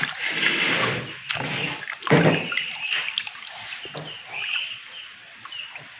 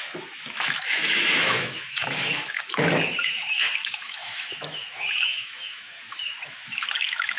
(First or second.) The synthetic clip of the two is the second